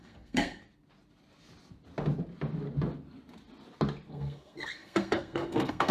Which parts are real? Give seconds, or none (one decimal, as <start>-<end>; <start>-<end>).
0.6-4.1